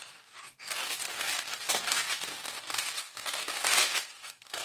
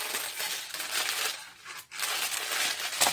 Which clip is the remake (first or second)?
first